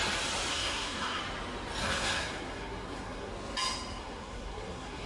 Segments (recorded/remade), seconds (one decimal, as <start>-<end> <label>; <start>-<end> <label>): 0.0-0.5 recorded; 0.5-1.2 remade; 1.2-1.8 recorded; 1.8-3.3 remade; 3.3-4.0 recorded; 4.0-5.1 remade